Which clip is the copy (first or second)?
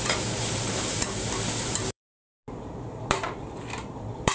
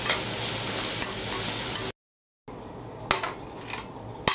first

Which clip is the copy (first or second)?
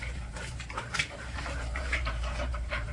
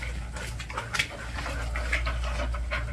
first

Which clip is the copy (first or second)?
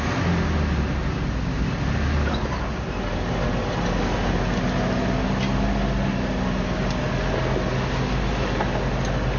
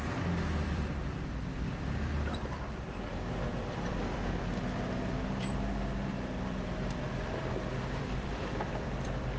second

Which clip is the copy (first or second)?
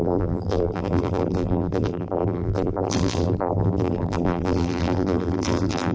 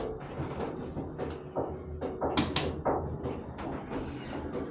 first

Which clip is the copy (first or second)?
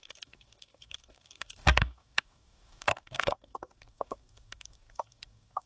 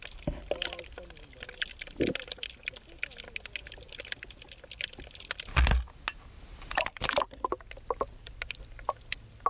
first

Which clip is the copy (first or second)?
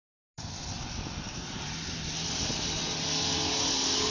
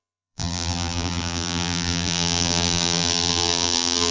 second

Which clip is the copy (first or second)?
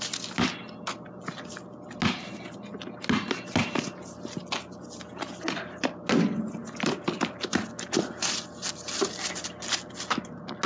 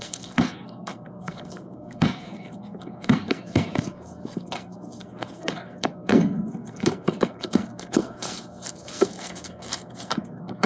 second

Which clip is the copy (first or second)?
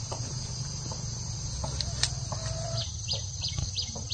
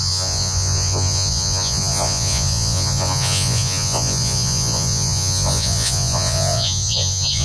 second